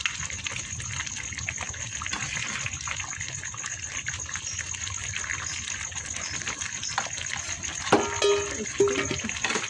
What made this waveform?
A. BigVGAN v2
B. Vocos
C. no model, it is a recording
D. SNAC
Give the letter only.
C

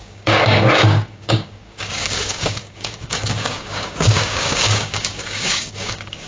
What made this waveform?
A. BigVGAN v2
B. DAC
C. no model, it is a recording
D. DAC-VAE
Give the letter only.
B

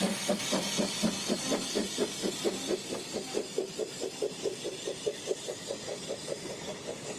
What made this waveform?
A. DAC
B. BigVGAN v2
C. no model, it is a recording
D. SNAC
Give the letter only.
C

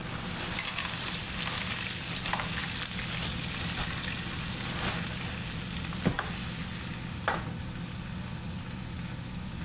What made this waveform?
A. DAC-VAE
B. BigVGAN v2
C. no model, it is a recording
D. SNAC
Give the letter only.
C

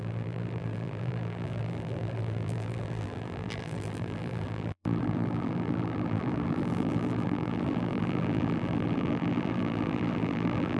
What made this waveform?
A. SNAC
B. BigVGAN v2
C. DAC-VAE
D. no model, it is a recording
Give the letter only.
B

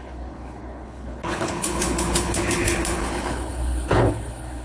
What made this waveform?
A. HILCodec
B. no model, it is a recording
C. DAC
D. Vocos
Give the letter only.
A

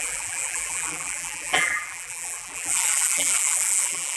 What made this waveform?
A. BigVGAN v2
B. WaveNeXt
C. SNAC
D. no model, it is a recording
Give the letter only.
A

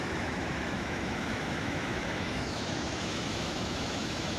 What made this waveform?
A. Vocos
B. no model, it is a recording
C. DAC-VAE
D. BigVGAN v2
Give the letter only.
C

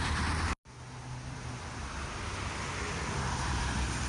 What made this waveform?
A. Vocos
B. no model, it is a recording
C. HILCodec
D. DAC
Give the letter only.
B